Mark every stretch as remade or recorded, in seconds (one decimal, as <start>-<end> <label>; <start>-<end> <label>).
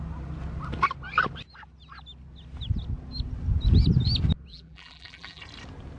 0.0-4.5 recorded; 4.5-5.4 remade; 5.4-6.0 recorded